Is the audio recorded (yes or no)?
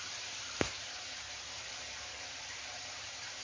yes